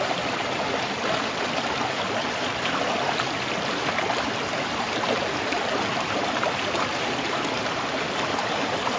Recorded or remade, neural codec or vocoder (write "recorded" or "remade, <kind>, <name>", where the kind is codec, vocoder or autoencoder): recorded